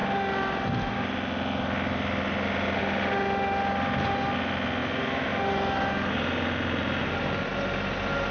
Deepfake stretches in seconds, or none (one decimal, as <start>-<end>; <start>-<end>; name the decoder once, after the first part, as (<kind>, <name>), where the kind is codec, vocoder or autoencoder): none